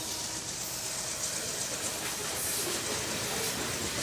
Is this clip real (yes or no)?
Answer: yes